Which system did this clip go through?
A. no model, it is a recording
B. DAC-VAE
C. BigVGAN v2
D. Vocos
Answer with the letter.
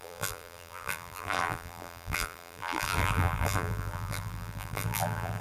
C